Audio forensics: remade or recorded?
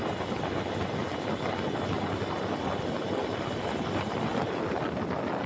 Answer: recorded